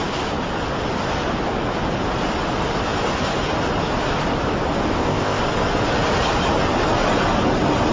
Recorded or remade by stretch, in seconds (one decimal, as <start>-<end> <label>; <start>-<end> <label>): 0.0-4.9 recorded; 4.9-5.4 remade; 5.4-7.9 recorded

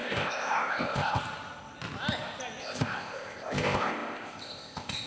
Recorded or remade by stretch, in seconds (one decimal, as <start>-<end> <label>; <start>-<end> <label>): 0.0-1.2 remade; 1.2-2.6 recorded; 2.6-5.1 remade